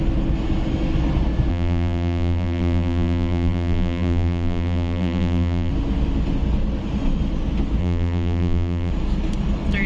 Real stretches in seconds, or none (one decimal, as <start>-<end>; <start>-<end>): 0.0-1.5; 5.7-7.8; 8.9-9.9